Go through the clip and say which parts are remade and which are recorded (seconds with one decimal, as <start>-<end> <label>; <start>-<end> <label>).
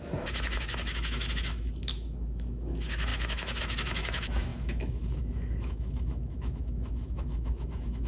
0.0-8.1 remade